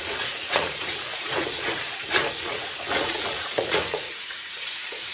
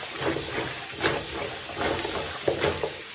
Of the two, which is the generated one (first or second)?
first